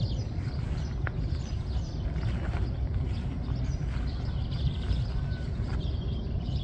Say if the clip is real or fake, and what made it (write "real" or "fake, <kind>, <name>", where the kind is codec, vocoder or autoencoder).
real